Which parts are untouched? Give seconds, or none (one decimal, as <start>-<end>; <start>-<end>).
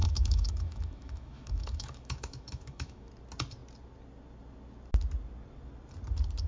3.1-6.5